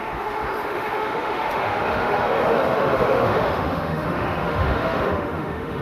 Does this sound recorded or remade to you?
remade